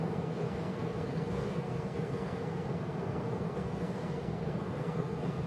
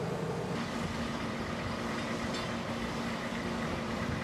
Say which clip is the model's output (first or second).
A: first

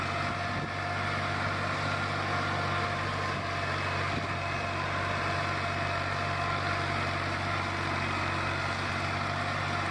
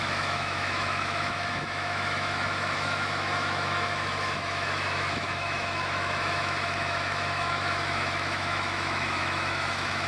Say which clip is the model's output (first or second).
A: second